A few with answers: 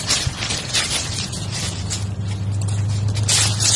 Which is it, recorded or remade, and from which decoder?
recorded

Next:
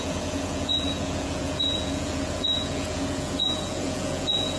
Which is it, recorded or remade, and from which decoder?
remade, vocoder, Vocos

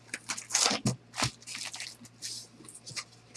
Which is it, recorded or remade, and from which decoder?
recorded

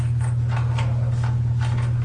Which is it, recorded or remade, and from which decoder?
recorded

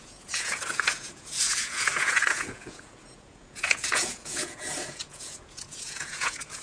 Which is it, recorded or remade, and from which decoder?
remade, vocoder, Vocos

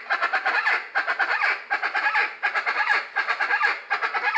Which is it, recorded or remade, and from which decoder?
recorded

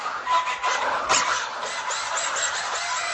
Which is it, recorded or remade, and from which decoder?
recorded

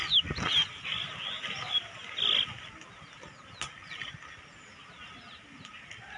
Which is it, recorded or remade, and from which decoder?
recorded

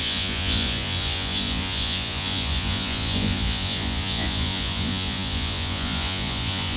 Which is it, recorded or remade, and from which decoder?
remade, vocoder, Vocos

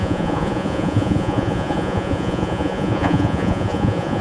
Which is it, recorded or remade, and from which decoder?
remade, vocoder, Vocos